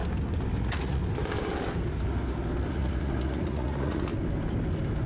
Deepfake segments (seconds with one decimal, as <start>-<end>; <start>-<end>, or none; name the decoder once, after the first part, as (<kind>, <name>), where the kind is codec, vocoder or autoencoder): 0.6-1.0 (vocoder, Vocos); 2.7-4.1